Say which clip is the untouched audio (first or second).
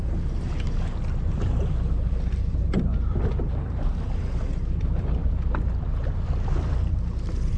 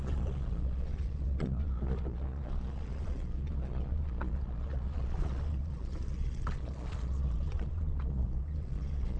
first